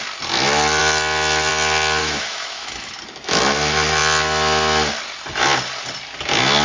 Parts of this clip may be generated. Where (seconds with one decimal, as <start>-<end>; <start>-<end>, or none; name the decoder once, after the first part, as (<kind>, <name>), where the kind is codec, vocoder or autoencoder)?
2.0-3.0 (autoencoder, DAC-VAE)